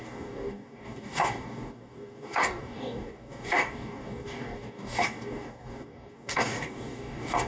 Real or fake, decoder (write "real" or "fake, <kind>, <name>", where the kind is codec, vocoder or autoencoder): fake, codec, DAC